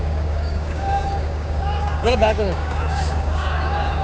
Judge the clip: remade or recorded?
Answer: remade